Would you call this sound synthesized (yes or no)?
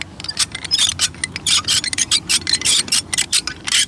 no